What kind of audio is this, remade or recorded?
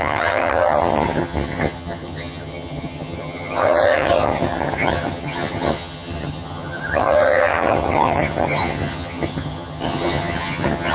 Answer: remade